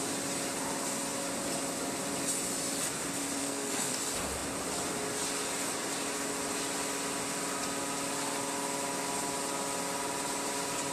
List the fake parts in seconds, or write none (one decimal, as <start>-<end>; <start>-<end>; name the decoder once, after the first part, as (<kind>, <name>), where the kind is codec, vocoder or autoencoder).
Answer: 3.4-4.0 (codec, SNAC)